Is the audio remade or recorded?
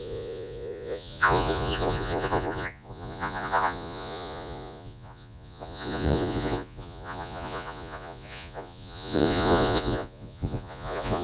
remade